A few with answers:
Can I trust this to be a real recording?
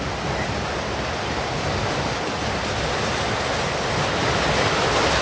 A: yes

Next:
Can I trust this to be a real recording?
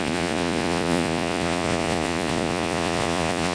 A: no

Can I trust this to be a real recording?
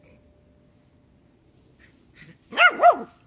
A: yes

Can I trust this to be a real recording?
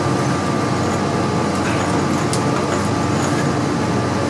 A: yes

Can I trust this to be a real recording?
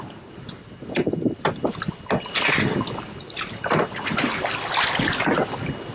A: yes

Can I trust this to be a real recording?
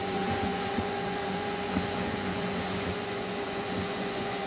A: no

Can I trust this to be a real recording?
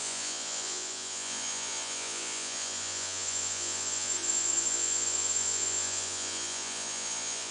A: no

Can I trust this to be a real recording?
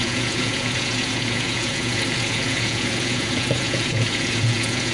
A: no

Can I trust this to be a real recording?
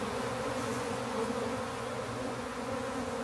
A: no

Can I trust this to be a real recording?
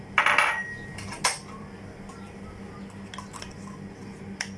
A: yes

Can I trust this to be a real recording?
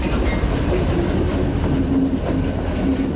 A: yes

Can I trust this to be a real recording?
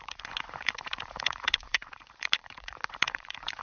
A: no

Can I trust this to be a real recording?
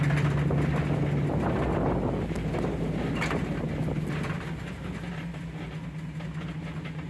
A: yes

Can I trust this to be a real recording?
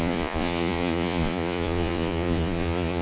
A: no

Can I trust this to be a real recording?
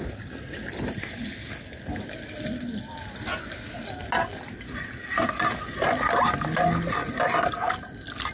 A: yes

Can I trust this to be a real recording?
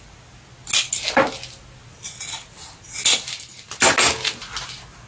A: yes